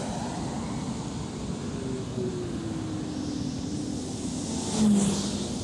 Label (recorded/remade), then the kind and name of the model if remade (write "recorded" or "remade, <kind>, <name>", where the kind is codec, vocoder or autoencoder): recorded